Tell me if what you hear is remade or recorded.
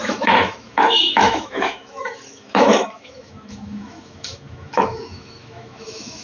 remade